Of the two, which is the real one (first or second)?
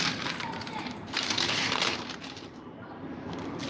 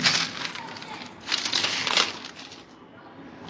second